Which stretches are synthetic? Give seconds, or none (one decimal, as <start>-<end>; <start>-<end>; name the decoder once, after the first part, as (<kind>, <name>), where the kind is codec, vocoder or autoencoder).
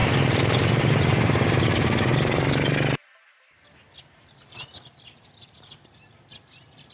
none